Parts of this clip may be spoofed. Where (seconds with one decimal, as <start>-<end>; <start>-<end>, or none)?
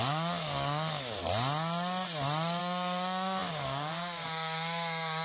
0.0-1.2; 2.6-5.2